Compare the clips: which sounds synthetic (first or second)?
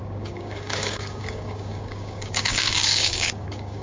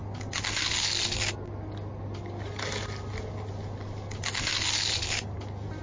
first